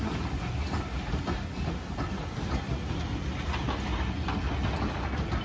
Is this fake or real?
real